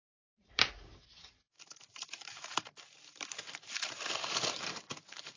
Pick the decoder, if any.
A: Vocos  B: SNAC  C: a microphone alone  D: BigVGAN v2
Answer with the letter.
D